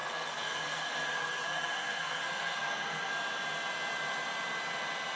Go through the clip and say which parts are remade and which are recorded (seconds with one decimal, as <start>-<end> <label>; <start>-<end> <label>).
0.0-3.1 remade; 3.1-5.2 recorded